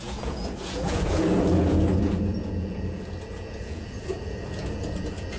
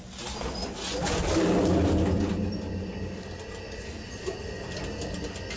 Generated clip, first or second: first